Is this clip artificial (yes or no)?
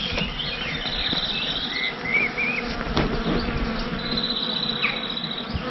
no